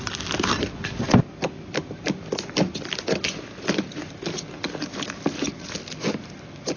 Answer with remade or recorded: recorded